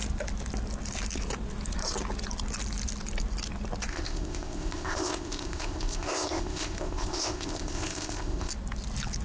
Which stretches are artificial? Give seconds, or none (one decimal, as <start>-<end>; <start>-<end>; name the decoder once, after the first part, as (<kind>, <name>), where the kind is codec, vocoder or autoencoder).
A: 3.9-8.5 (codec, ZipCodec)